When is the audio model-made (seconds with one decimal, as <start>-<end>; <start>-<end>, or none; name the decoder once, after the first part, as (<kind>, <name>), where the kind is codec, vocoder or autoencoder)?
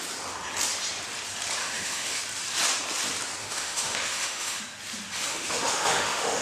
1.6-2.2 (autoencoder, DAC-VAE); 3.4-4.6; 5.3-6.4